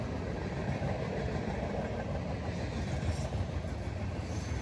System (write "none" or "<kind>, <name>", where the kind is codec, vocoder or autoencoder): none